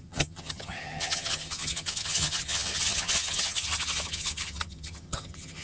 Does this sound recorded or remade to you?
remade